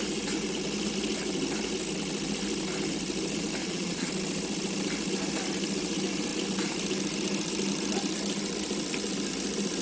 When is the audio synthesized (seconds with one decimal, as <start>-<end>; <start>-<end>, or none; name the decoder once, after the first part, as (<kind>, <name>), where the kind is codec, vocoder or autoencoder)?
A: 3.6-4.1 (vocoder, Vocos)